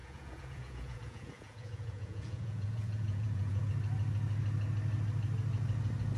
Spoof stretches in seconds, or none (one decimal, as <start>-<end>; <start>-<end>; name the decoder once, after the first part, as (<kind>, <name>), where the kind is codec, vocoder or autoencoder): 0.0-3.7 (vocoder, Vocos)